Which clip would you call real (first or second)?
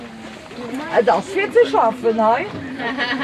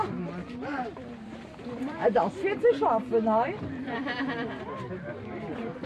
first